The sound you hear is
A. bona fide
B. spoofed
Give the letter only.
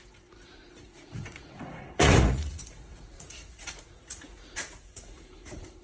B